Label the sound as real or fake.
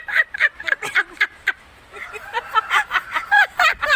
fake